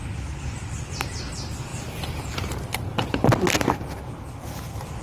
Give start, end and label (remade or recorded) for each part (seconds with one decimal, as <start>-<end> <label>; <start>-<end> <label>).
0.0-5.0 recorded